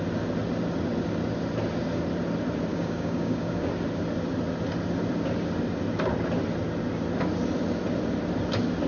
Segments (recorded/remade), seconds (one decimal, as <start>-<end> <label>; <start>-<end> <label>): 0.0-2.7 recorded; 2.7-3.7 remade; 3.7-8.9 recorded